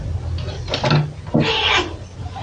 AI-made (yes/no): no